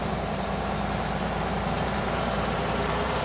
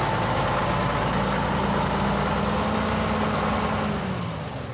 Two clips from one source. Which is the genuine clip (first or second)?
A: second